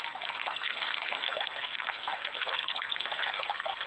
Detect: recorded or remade remade